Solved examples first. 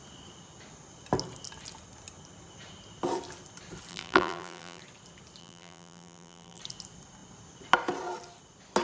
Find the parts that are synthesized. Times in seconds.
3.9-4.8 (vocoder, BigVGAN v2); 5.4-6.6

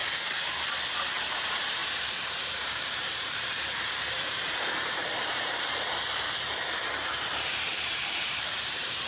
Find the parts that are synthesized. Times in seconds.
1.1-9.1 (vocoder, BigVGAN v2)

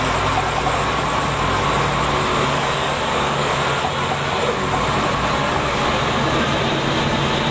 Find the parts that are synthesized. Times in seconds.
2.3-3.6 (codec, DAC); 5.4-5.9

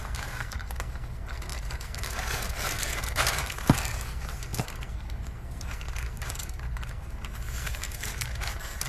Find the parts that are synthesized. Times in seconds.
0.0-8.9 (codec, SNAC)